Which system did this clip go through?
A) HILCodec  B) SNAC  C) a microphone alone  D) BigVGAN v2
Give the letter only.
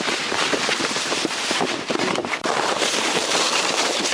D